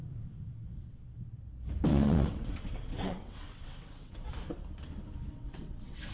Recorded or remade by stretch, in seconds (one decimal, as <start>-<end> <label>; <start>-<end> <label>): 0.0-1.9 recorded; 1.9-4.3 remade; 4.3-5.3 recorded; 5.3-6.1 remade

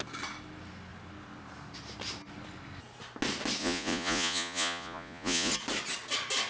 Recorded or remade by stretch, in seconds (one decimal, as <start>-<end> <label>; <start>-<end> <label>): 0.0-3.6 recorded; 3.6-5.5 remade; 5.5-6.5 recorded